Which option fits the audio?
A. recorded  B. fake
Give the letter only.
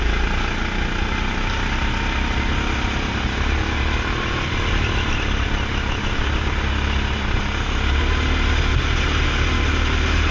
A